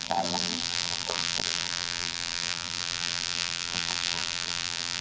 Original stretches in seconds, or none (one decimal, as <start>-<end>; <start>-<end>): none